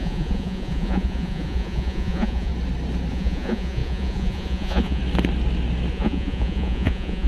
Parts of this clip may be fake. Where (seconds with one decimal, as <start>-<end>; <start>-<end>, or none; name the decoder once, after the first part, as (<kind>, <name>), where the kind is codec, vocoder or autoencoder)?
0.0-2.5 (vocoder, Vocos); 3.1-5.0; 5.9-7.3